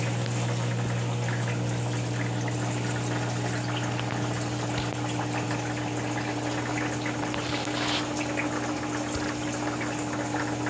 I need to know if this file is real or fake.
real